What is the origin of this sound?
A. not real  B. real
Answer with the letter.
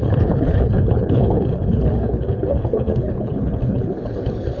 A